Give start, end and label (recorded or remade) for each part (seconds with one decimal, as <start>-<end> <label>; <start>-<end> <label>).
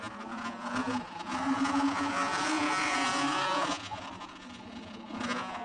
0.0-5.6 remade